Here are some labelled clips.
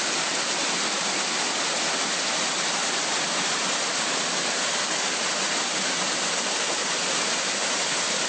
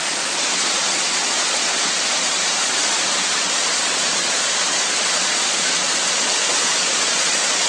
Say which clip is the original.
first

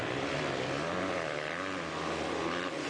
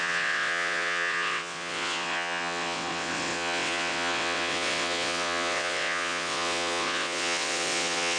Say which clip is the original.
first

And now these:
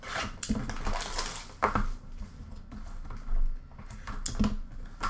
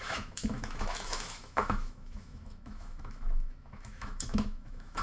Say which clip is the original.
first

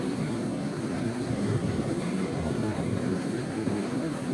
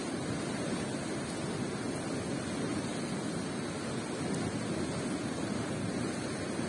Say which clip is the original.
second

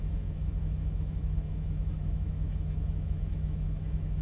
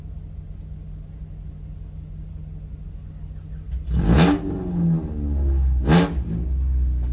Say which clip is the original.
second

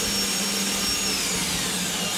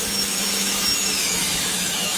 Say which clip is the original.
first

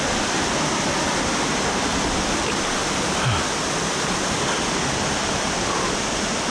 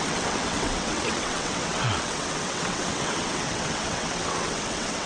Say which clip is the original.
first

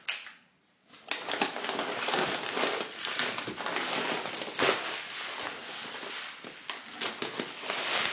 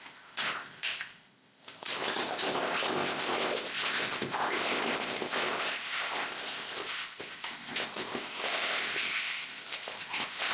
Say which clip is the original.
first